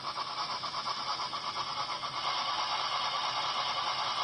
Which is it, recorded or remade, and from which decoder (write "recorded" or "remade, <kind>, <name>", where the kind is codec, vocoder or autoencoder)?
recorded